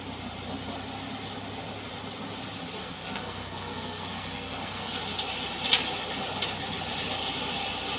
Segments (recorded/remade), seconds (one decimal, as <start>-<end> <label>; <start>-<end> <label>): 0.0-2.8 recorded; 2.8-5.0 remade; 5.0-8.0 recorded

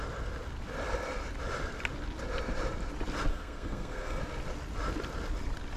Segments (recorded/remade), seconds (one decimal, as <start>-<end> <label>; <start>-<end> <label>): 0.0-3.3 recorded; 3.3-4.2 remade; 4.2-5.8 recorded

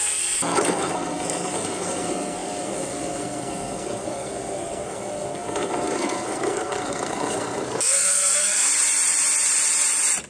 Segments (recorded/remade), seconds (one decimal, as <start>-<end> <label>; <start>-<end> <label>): 0.0-8.7 remade; 8.7-10.3 recorded

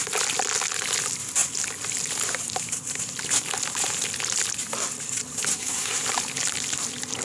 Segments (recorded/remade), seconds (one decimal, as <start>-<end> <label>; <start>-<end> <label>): 0.0-5.5 recorded; 5.5-6.0 remade; 6.0-7.2 recorded